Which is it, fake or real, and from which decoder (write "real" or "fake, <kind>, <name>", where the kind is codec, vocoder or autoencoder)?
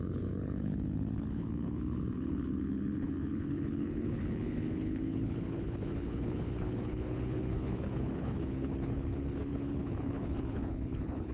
fake, codec, HILCodec